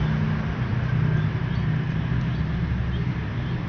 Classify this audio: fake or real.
real